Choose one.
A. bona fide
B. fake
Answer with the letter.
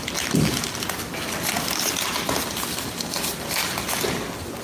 A